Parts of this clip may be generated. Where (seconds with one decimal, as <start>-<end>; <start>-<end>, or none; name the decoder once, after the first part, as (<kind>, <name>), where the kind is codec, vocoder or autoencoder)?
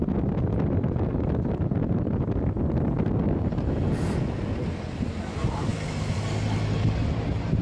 none